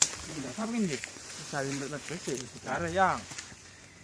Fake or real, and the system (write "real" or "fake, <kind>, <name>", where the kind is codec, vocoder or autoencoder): fake, vocoder, Vocos